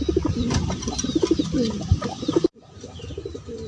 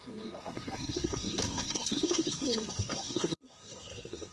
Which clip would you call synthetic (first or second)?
second